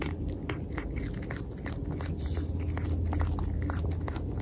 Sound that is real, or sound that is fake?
real